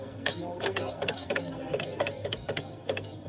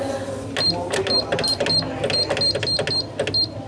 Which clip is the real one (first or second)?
second